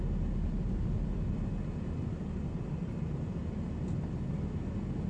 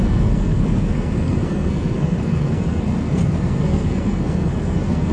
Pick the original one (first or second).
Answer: first